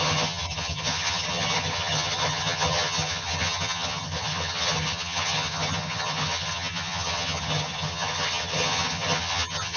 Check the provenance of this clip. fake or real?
fake